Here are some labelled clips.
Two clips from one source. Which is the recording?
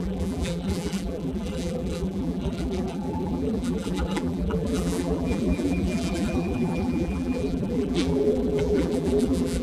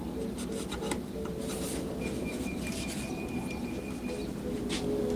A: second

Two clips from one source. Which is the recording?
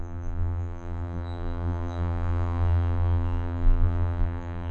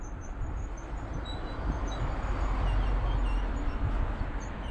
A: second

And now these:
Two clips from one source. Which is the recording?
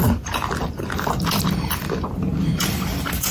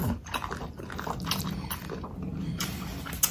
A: second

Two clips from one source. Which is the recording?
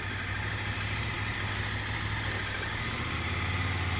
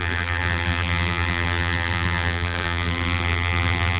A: first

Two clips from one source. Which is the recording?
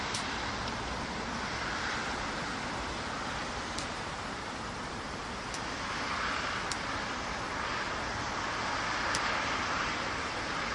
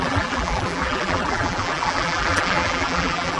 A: first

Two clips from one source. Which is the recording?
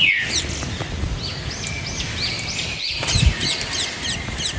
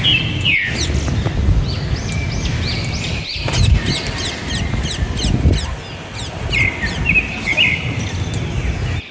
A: second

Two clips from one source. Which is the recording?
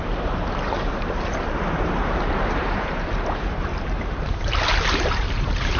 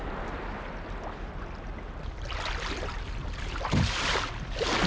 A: second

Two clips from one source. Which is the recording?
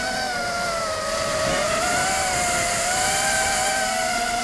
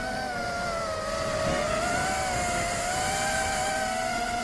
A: second